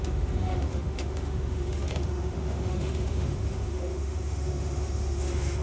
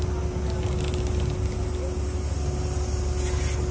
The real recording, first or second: second